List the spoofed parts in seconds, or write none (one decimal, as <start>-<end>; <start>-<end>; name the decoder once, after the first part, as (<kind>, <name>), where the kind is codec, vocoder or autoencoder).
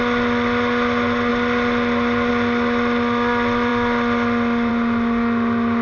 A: none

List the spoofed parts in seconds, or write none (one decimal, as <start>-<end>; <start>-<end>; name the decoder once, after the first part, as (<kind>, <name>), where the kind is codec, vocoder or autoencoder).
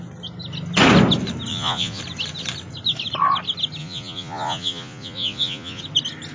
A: 1.5-2.0 (vocoder, Vocos); 3.8-5.8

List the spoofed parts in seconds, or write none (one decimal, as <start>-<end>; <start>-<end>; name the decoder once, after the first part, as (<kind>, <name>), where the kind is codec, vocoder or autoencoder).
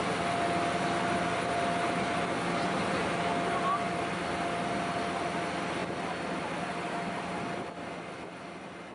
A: none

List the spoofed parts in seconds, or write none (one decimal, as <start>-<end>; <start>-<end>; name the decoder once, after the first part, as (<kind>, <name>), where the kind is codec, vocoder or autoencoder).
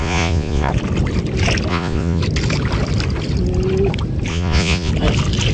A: 0.0-0.7 (vocoder, Vocos); 1.7-2.2; 4.3-4.9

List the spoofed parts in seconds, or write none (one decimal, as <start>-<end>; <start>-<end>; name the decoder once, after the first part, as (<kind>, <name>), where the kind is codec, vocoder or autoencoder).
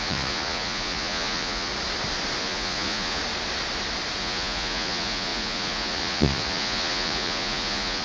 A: 0.0-1.7 (vocoder, Vocos); 2.4-3.2; 4.2-8.0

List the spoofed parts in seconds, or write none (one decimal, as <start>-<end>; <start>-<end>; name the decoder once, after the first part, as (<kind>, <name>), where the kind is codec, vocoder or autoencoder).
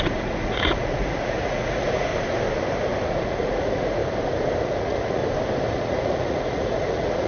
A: 0.0-2.1 (vocoder, Vocos); 3.1-4.0; 4.6-5.2; 5.7-7.3